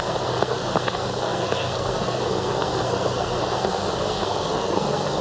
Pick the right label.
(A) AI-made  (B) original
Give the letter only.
A